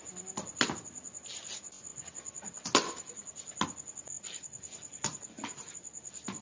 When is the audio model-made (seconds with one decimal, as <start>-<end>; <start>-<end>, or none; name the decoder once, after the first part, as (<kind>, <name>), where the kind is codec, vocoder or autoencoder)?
none